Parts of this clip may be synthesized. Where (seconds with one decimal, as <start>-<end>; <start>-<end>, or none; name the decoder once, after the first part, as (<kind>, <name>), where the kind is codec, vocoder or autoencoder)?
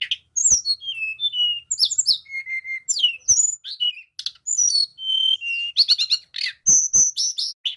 none